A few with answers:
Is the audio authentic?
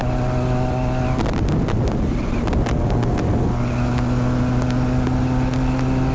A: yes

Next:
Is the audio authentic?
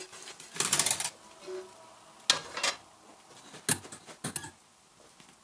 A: yes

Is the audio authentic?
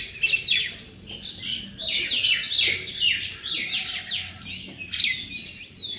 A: yes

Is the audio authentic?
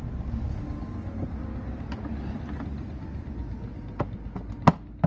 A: yes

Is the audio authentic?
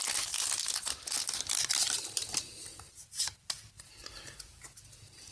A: yes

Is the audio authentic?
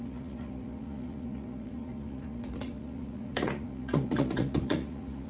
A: no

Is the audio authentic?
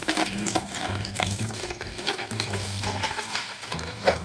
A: no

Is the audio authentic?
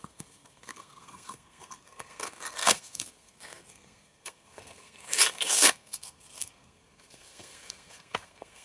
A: no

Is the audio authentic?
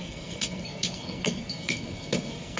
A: no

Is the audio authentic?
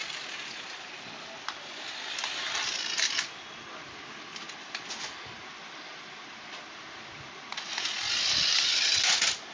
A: yes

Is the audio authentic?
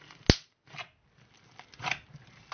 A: yes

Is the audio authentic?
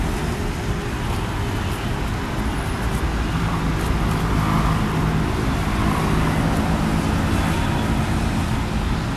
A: yes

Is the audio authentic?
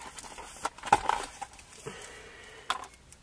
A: yes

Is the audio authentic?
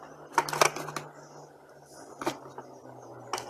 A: yes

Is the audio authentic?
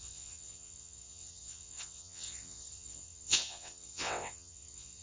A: no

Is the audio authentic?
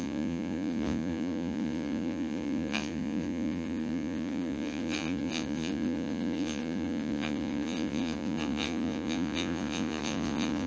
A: no